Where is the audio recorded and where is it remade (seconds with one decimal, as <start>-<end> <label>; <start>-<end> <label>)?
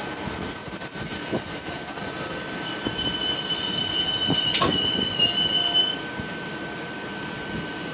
0.0-0.6 recorded; 0.6-2.3 remade; 2.3-7.9 recorded